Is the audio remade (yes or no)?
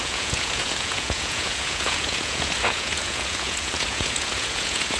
yes